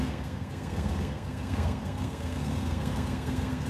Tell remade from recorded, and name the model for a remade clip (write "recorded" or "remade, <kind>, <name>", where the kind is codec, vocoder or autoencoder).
remade, codec, SNAC